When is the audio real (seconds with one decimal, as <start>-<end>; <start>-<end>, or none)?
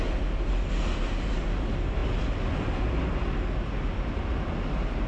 0.0-5.1